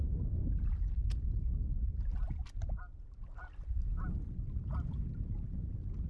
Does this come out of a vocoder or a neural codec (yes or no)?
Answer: no